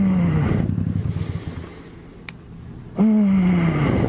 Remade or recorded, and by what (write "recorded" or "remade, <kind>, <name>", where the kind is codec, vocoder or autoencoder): recorded